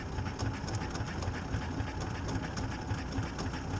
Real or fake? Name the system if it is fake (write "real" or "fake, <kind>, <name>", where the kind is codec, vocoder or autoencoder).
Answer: real